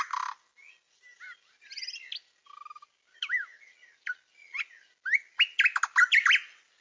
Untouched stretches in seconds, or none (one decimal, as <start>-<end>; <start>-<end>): 0.0-6.8